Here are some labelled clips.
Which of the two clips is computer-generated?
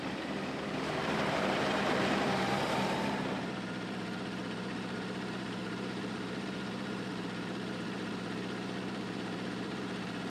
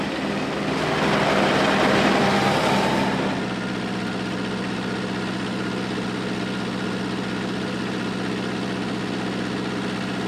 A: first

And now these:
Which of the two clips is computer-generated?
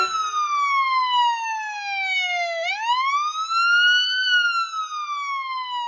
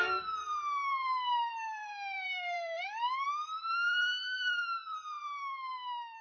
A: second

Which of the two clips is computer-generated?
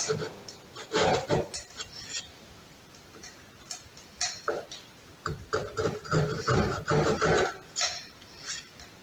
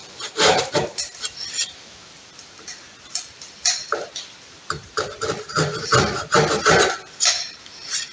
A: second